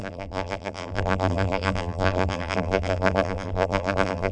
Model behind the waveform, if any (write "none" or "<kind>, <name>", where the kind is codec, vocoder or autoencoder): vocoder, BigVGAN v2